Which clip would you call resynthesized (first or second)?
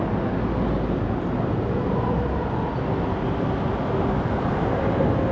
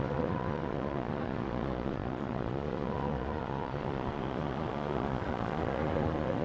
second